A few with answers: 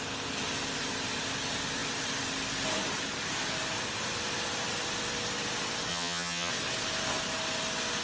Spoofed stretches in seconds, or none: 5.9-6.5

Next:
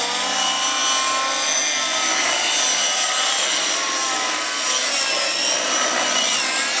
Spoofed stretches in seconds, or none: none

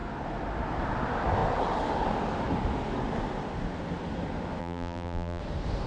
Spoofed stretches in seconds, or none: 4.6-5.4

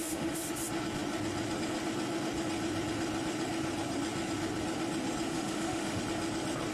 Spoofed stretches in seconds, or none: 0.0-0.5; 5.3-6.0

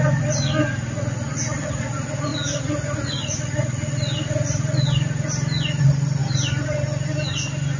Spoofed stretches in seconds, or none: none

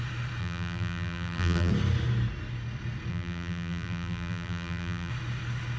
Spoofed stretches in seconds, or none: 0.4-1.7; 3.1-5.1

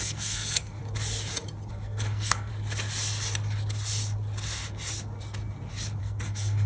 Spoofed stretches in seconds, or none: 0.0-0.8; 1.7-2.5; 6.0-6.7